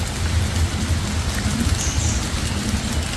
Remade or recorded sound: recorded